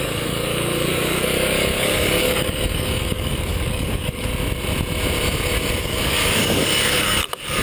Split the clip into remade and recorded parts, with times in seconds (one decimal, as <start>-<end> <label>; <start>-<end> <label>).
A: 0.0-4.3 remade; 4.3-5.8 recorded; 5.8-7.6 remade